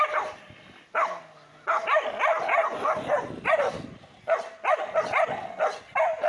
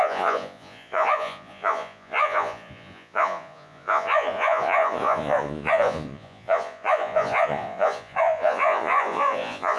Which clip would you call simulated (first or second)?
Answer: second